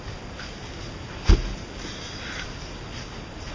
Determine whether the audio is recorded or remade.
recorded